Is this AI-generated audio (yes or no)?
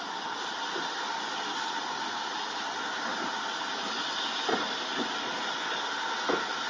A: no